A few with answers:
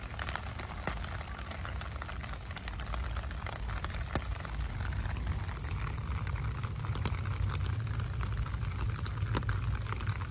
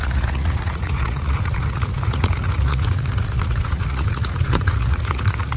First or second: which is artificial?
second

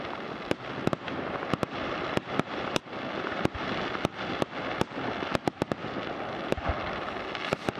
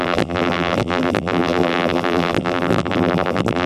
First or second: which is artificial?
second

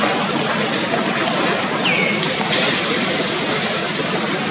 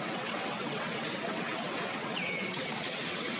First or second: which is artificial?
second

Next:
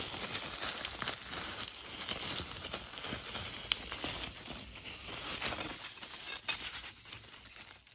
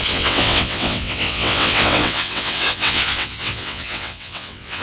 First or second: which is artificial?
second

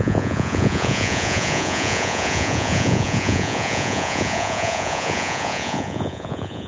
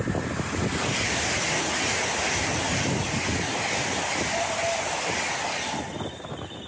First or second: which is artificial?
first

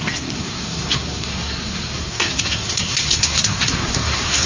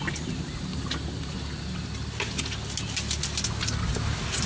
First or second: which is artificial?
first